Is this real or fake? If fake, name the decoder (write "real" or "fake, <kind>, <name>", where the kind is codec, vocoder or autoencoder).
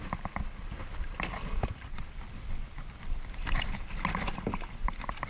real